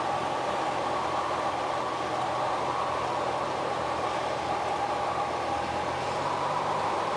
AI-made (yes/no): yes